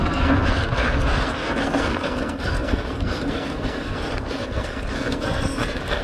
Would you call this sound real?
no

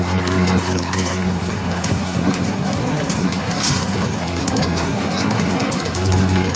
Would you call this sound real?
no